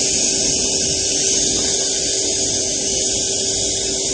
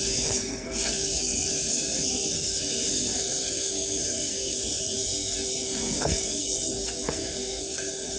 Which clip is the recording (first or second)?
first